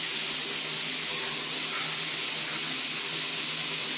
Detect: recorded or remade recorded